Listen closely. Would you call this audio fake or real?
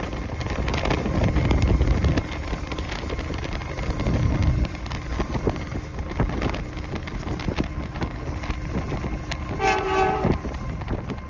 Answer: real